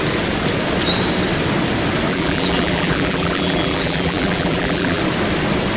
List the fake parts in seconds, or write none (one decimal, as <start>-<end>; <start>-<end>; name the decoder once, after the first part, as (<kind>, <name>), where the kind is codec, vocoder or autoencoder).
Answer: 2.1-5.0 (vocoder, BigVGAN v2)